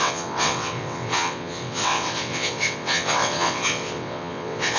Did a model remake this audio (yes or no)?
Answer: yes